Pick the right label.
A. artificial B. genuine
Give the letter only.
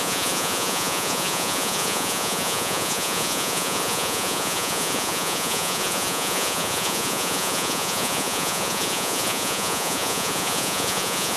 A